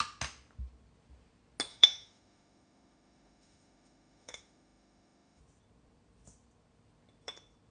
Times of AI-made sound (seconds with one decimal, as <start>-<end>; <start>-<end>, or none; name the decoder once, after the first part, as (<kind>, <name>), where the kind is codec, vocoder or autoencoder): 1.7-5.4 (autoencoder, DAC-VAE)